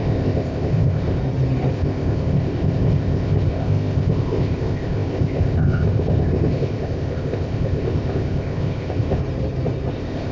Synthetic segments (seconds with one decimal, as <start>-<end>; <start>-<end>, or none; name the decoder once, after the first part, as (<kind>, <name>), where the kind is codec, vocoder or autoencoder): 0.0-1.2 (codec, ZipCodec); 1.7-9.2; 9.9-10.3